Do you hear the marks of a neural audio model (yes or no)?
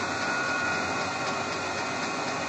yes